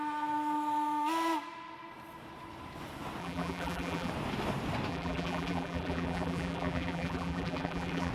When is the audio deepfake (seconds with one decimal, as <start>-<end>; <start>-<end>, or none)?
3.2-4.1; 4.9-8.1